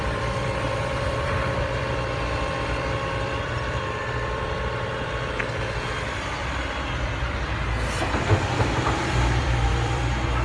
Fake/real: fake